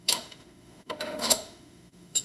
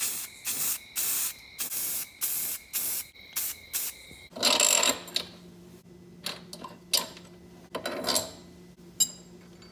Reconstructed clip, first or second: first